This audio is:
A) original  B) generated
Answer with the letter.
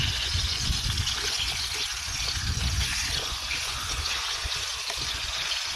B